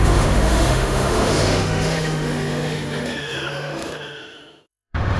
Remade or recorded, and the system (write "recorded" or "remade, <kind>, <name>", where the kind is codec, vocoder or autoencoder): remade, autoencoder, DAC-VAE